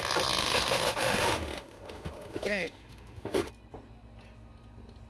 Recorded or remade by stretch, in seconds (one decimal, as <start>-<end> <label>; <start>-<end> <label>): 0.0-0.4 recorded; 0.4-3.5 remade; 3.5-5.1 recorded